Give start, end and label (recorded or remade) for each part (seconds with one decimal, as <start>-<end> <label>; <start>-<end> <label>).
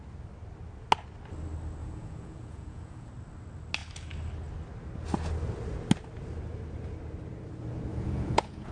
0.0-1.8 recorded; 1.8-3.1 remade; 3.1-7.9 recorded; 7.9-8.7 remade